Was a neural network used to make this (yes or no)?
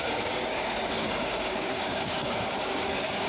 yes